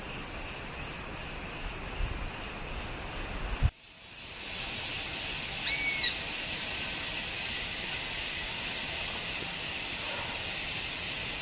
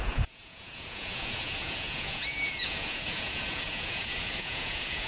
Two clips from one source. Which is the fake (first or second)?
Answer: second